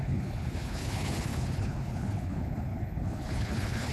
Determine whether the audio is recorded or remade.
remade